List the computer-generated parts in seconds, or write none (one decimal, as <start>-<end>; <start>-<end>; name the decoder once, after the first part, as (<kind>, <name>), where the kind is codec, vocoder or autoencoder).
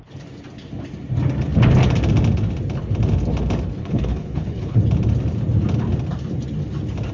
3.8-4.8 (codec, HILCodec)